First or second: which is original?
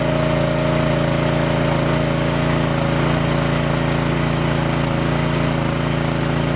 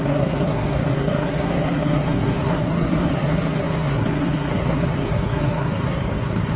first